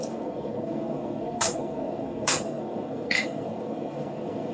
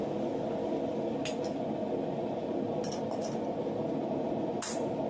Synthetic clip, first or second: first